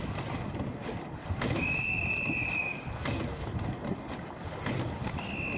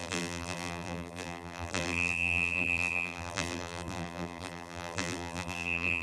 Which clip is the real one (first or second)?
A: first